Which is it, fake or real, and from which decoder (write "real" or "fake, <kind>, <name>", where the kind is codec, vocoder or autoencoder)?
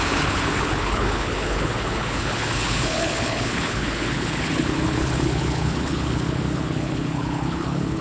fake, codec, HILCodec